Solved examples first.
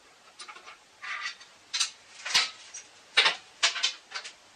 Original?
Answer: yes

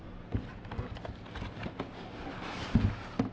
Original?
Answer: yes